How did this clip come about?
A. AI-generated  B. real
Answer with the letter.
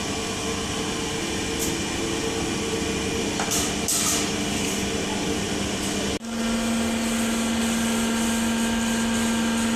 B